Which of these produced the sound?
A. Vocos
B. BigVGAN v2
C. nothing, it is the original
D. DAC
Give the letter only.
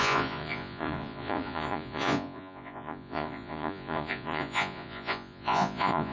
A